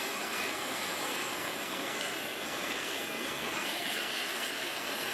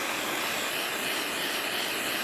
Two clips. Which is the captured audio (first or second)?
second